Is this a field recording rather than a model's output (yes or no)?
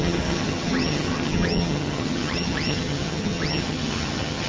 no